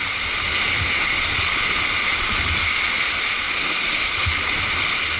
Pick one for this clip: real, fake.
real